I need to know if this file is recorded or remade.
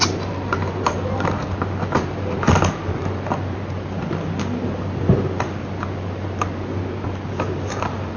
recorded